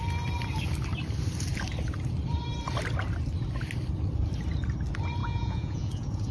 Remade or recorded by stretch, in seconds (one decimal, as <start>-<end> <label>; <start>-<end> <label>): 0.0-5.2 recorded; 5.2-6.3 remade